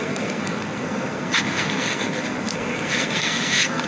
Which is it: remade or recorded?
remade